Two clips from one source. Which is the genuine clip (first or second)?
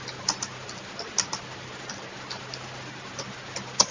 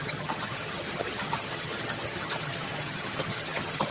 first